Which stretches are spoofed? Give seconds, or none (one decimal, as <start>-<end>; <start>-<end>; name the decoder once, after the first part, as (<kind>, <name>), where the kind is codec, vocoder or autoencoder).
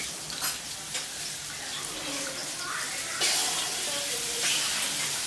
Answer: 0.0-2.4 (vocoder, BigVGAN v2); 4.0-5.3